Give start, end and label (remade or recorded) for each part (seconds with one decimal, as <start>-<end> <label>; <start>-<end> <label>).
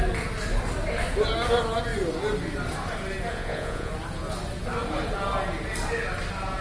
0.0-3.3 recorded; 3.3-3.9 remade; 3.9-6.6 recorded